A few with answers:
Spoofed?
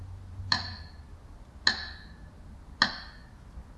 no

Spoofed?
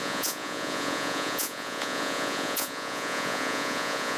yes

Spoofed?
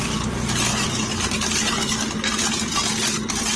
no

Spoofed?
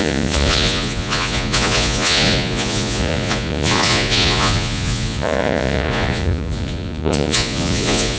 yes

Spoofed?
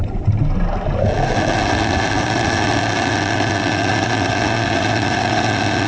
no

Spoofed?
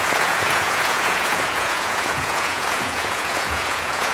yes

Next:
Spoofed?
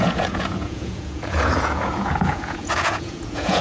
yes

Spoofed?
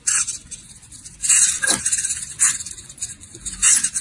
yes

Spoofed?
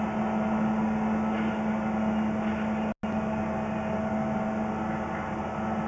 no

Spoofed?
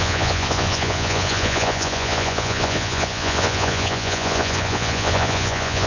yes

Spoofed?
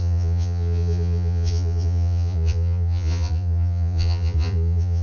yes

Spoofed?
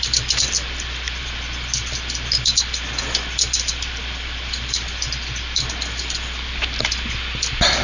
no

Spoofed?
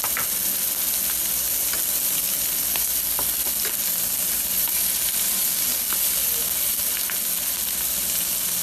no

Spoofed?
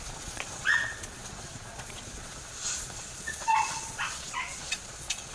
yes